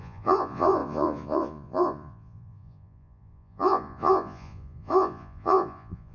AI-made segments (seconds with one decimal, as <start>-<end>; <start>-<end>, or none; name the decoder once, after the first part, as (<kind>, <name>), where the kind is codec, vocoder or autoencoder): 0.0-6.1 (vocoder, Vocos)